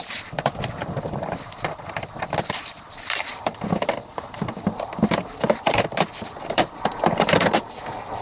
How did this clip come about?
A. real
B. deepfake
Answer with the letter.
B